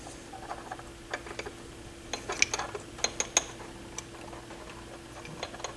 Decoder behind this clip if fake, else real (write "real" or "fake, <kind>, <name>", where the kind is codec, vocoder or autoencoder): real